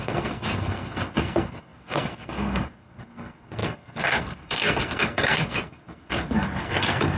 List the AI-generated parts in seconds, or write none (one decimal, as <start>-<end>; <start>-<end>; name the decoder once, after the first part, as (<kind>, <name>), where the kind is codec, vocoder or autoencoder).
0.0-7.2 (codec, SNAC)